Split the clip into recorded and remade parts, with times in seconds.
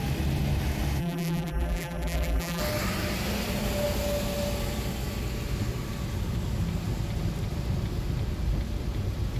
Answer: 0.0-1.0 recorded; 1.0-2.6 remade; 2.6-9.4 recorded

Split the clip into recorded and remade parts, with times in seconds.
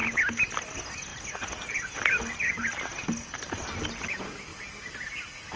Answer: 0.0-5.6 recorded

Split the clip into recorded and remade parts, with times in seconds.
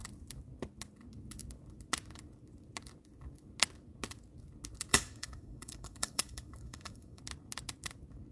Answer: 0.0-4.9 recorded; 4.9-7.2 remade; 7.2-8.3 recorded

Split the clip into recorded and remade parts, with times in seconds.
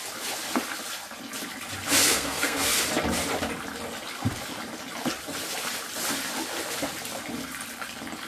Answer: 0.0-2.0 recorded; 2.0-2.8 remade; 2.8-8.3 recorded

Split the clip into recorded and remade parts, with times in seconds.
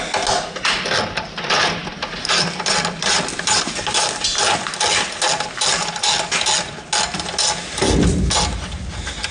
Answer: 0.0-1.8 recorded; 1.8-5.1 remade; 5.1-9.3 recorded